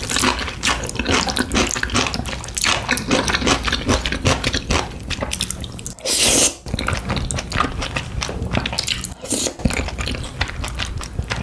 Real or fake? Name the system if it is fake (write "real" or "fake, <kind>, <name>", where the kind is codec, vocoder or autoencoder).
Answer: real